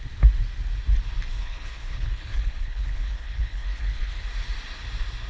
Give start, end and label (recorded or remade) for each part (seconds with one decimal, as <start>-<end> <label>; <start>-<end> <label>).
0.0-1.3 recorded; 1.3-4.2 remade; 4.2-5.3 recorded